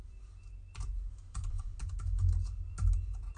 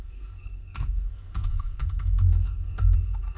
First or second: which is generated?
second